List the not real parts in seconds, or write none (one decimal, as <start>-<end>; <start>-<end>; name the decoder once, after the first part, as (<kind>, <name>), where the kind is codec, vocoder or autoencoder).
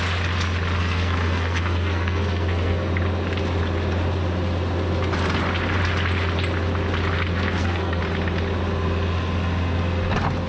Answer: 0.8-2.9 (codec, SNAC); 7.3-8.0